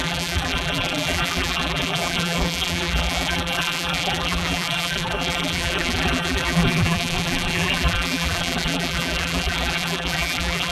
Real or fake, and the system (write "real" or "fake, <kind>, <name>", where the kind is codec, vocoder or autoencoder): fake, vocoder, BigVGAN v2